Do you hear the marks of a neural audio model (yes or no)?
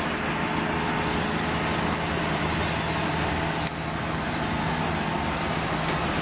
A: no